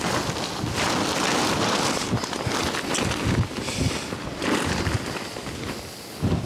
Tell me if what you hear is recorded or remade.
recorded